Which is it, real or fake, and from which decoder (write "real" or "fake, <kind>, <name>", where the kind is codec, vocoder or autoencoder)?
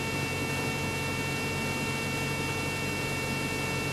real